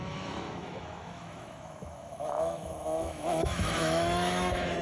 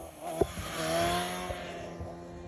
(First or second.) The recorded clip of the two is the second